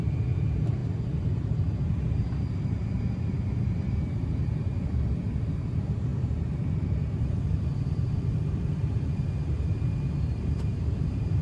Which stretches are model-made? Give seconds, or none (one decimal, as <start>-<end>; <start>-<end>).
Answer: 0.0-11.4